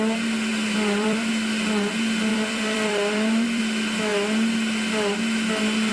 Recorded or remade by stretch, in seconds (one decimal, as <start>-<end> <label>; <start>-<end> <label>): 0.0-0.5 recorded; 0.5-1.3 remade; 1.3-2.3 recorded; 2.3-3.6 remade; 3.6-5.9 recorded